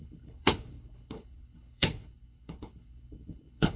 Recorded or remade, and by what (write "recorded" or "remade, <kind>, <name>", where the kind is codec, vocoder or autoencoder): remade, codec, HILCodec